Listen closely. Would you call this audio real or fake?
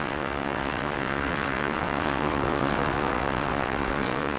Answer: fake